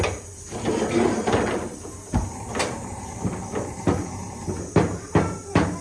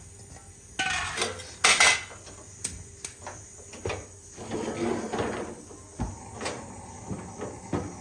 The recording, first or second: second